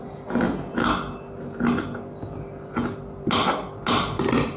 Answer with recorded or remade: recorded